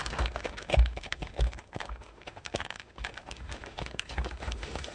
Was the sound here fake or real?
fake